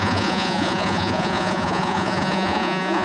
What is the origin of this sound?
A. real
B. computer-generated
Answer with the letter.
B